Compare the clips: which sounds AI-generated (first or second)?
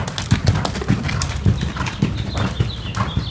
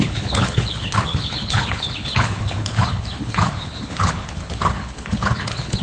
second